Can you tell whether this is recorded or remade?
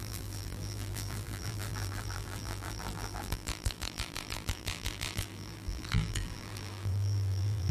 remade